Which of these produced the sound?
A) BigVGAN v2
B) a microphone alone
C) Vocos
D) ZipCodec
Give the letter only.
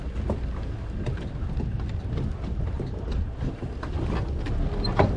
B